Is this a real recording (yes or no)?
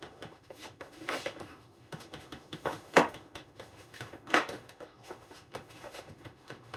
no